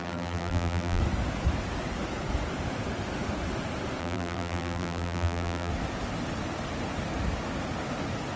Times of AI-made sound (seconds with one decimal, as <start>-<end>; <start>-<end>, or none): 0.0-1.0; 4.0-5.7